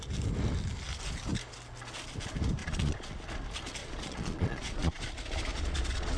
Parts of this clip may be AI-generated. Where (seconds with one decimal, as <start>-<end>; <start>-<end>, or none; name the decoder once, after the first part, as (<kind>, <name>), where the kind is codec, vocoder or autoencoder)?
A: 2.6-3.2 (vocoder, Vocos); 3.8-5.0; 5.5-6.2